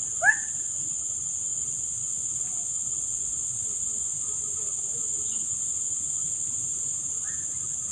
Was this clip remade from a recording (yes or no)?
no